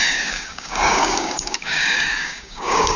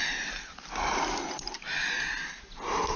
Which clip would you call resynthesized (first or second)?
first